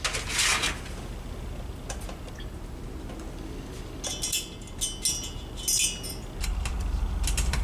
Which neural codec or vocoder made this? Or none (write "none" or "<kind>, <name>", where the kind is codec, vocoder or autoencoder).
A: none